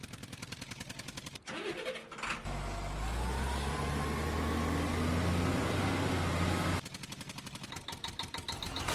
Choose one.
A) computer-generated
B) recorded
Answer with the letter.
B